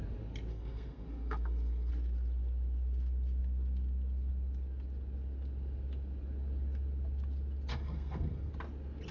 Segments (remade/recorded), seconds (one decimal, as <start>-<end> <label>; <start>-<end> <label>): 0.0-0.5 recorded; 0.5-1.9 remade; 1.9-7.7 recorded; 7.7-8.5 remade; 8.5-9.1 recorded